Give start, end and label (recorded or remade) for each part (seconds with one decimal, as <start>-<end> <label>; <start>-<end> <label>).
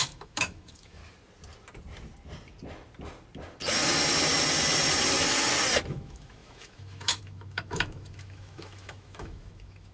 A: 0.0-1.0 remade; 1.0-5.9 recorded; 5.9-9.9 remade